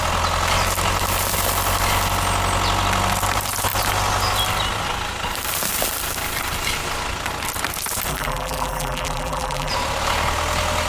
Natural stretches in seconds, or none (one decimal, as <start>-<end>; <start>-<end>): 0.0-8.1; 9.7-10.9